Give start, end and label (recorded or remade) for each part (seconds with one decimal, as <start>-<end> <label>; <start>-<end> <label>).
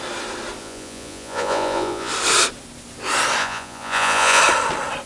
0.0-0.6 recorded; 0.6-2.1 remade; 2.1-3.4 recorded; 3.4-4.4 remade; 4.4-5.1 recorded